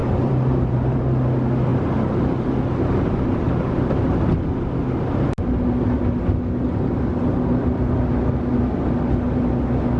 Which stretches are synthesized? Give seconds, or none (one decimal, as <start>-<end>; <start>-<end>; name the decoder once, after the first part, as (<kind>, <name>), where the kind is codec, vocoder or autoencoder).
0.0-1.0 (vocoder, BigVGAN v2); 1.7-2.2